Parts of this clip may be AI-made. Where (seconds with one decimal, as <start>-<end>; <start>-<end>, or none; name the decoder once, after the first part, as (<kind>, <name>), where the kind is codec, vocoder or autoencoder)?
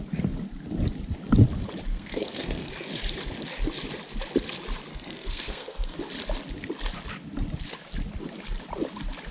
1.9-2.7 (codec, SNAC); 4.9-6.0